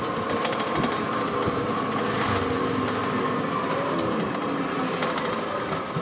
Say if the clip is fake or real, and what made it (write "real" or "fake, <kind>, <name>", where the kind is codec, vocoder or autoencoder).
real